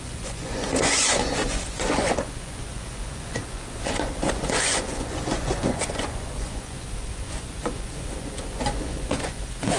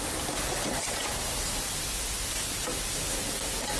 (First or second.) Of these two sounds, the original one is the second